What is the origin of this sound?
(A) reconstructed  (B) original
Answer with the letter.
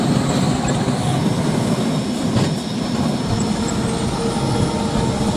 B